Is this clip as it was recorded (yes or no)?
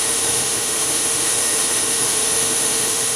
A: no